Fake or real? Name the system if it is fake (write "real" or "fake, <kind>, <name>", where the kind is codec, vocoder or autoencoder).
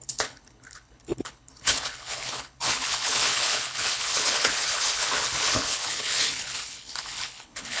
fake, codec, HILCodec